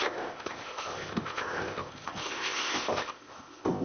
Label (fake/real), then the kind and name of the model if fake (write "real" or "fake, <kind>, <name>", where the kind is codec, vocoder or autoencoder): fake, codec, ZipCodec